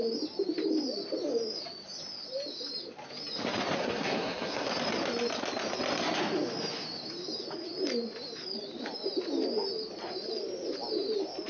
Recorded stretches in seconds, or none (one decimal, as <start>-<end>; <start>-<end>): 0.0-3.8; 4.7-11.5